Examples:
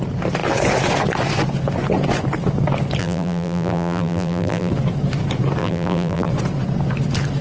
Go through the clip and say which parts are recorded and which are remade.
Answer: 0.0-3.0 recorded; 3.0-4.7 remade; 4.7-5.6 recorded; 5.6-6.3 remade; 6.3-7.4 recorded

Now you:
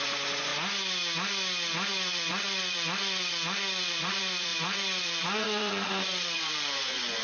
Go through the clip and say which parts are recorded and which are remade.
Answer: 0.0-0.5 remade; 0.5-1.9 recorded; 1.9-7.2 remade

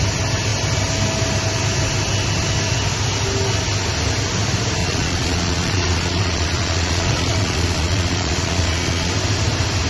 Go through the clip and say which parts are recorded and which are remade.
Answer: 0.0-4.8 recorded; 4.8-9.1 remade; 9.1-9.9 recorded

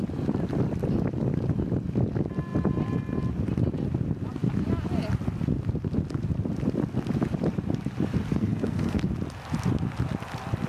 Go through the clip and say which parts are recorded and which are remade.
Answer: 0.0-8.3 recorded; 8.3-9.0 remade; 9.0-10.7 recorded

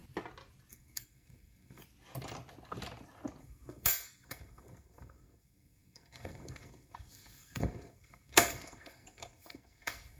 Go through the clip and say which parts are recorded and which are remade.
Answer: 0.0-0.7 recorded; 0.7-1.8 remade; 1.8-3.4 recorded; 3.4-10.2 remade

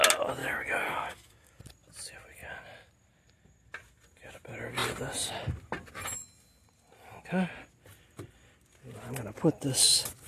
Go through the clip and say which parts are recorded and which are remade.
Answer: 0.0-0.4 recorded; 0.4-1.6 remade; 1.6-10.3 recorded